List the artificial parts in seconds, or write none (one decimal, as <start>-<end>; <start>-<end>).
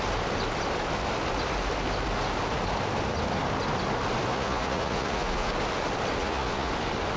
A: 4.3-5.5; 6.2-6.7